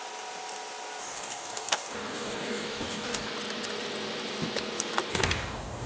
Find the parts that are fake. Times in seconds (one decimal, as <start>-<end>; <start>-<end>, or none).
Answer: 1.0-3.3; 5.1-5.9